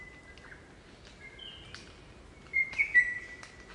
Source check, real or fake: real